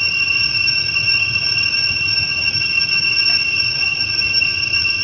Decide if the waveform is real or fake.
fake